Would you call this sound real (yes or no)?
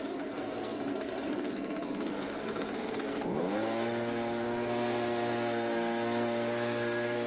no